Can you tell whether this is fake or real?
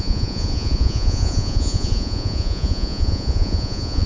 fake